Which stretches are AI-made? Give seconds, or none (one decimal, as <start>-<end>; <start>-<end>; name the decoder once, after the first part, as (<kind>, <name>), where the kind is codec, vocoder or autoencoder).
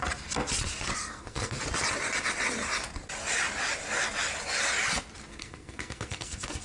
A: 1.0-1.6 (codec, SNAC); 5.3-6.6